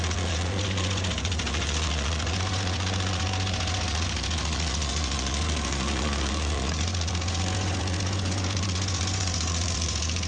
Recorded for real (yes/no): no